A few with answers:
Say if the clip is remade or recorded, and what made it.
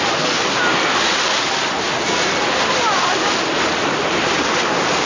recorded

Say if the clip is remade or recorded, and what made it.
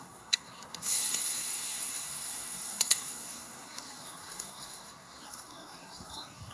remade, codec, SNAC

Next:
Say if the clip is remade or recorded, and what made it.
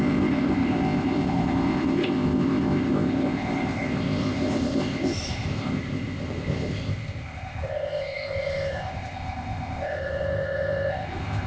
remade, codec, ZipCodec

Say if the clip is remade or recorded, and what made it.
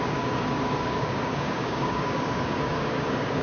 remade, codec, DAC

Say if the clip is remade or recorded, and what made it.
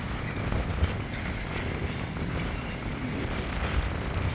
recorded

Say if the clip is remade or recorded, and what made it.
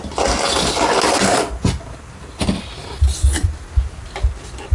recorded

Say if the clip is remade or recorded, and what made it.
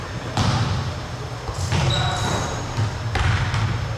recorded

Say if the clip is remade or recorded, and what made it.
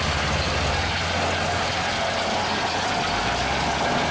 recorded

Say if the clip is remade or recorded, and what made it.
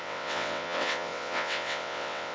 remade, vocoder, WaveNeXt